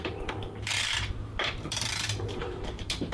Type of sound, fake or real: fake